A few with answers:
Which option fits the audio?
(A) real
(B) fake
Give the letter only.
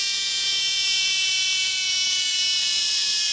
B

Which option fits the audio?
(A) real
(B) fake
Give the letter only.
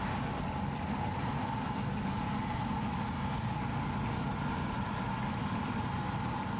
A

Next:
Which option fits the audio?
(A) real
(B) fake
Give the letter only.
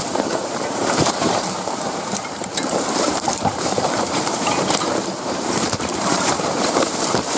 B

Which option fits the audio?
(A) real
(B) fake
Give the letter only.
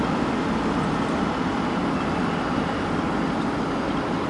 A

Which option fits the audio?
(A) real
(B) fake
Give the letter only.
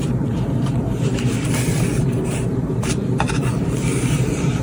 B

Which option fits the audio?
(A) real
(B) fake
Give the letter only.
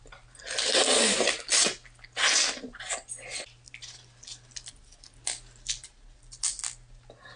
A